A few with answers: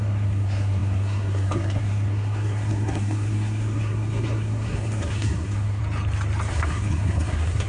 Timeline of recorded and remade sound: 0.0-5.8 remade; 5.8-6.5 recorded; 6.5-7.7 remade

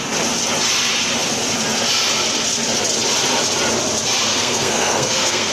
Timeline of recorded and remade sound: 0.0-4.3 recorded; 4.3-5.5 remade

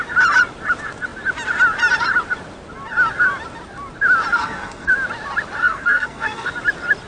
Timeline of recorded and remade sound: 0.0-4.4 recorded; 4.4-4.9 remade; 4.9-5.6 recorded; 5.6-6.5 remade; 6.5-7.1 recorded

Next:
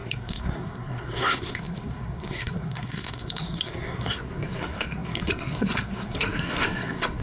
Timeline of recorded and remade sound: 0.0-7.2 remade